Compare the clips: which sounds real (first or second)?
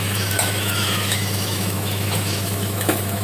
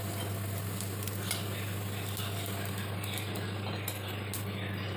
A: second